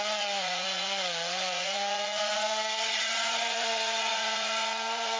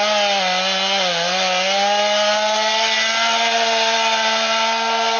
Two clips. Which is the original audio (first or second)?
second